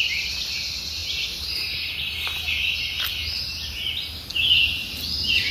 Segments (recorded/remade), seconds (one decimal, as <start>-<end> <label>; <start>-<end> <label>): 0.0-1.0 recorded; 1.0-2.0 remade; 2.0-5.5 recorded